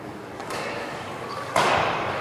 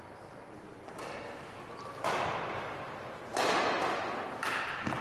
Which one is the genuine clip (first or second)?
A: second